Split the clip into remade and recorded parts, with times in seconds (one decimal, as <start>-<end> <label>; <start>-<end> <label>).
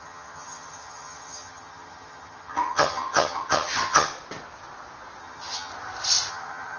0.0-4.1 remade; 4.1-5.2 recorded; 5.2-5.7 remade; 5.7-6.3 recorded; 6.3-6.8 remade